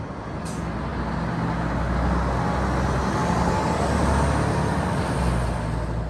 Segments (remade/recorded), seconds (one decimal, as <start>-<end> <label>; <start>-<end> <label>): 0.0-6.1 recorded